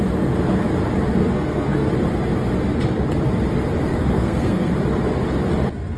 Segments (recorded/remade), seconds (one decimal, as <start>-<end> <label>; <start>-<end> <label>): 0.0-1.2 recorded; 1.2-1.9 remade; 1.9-3.9 recorded; 3.9-4.7 remade; 4.7-6.0 recorded